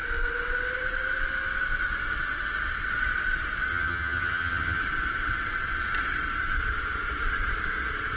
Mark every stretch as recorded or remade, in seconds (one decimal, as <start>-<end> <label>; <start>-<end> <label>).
0.0-3.7 recorded; 3.7-4.8 remade; 4.8-8.2 recorded